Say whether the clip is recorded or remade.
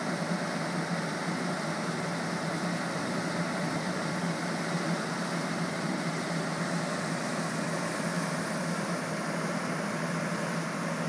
recorded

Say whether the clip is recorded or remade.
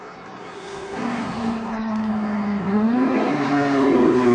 remade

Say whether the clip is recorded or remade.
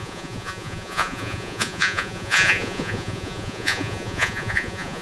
remade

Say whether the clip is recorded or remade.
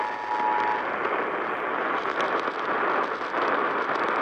recorded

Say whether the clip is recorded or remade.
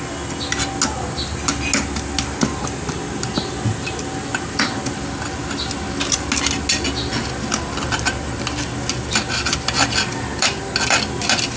recorded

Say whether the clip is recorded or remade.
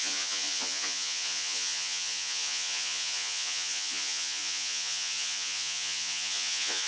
remade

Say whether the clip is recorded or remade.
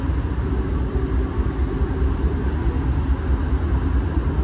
recorded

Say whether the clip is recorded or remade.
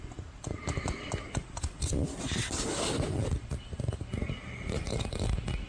recorded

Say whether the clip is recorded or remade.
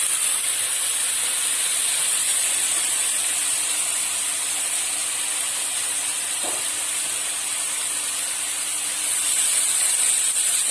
remade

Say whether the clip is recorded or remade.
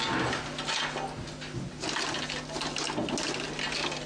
recorded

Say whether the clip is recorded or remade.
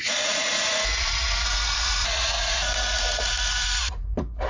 remade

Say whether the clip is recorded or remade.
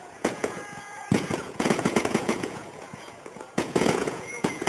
remade